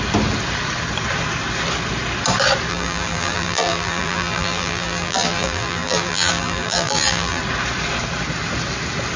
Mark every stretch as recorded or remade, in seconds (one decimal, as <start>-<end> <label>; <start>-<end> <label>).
0.0-2.7 recorded; 2.7-7.4 remade; 7.4-9.2 recorded